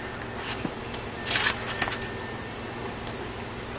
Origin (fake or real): real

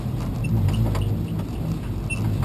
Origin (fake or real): real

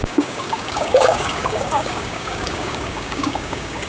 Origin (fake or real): fake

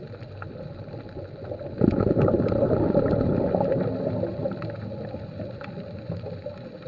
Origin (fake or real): real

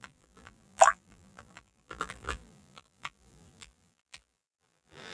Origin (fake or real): fake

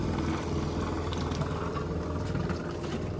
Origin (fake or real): real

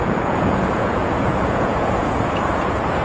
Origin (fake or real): fake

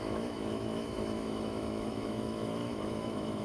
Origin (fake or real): fake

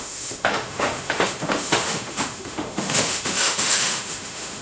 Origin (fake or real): fake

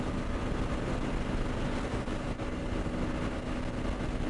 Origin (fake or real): real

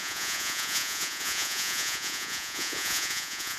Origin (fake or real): fake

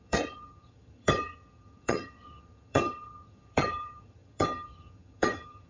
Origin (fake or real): fake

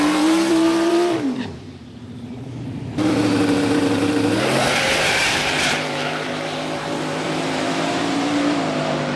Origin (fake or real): fake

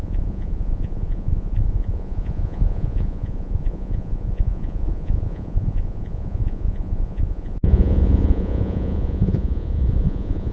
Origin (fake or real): fake